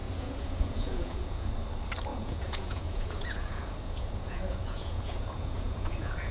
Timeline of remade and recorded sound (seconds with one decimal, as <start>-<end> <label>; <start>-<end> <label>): 0.0-1.5 remade; 1.5-2.1 recorded; 2.1-6.3 remade